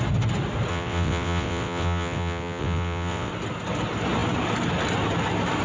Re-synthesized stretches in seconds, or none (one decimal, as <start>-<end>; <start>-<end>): 0.7-3.3